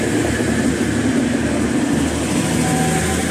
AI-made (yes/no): no